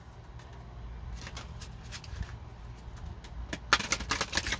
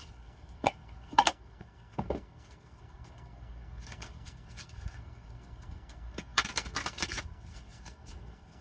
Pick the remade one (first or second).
second